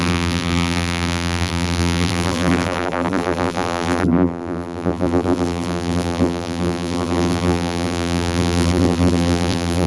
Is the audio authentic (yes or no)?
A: no